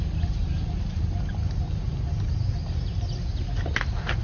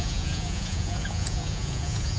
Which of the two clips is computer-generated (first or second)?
second